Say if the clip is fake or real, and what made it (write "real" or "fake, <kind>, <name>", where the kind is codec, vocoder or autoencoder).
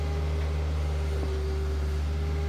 real